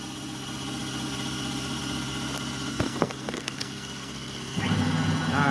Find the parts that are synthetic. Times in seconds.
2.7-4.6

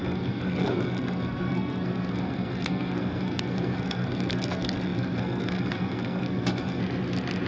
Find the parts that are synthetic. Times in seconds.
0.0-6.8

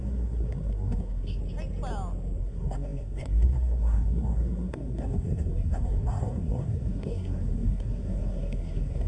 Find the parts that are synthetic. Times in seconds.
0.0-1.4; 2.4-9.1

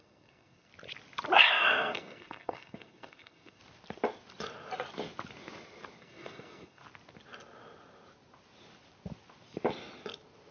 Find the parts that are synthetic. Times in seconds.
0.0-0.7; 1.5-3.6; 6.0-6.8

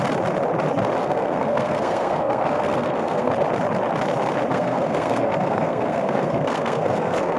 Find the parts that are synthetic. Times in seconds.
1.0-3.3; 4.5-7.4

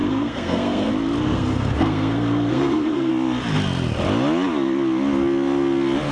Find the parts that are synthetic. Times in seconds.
0.0-0.9; 1.3-3.1